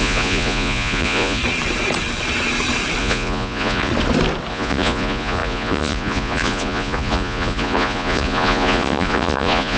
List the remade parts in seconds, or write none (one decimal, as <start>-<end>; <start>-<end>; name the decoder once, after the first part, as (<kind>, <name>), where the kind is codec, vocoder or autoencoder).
0.0-1.4 (vocoder, Vocos); 3.0-3.9; 4.5-9.8